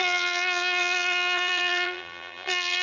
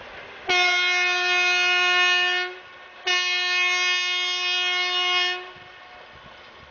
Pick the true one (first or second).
second